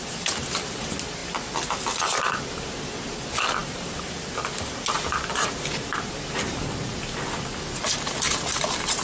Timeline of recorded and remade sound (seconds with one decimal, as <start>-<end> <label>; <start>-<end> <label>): 0.0-9.0 recorded